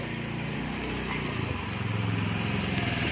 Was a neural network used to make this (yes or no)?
yes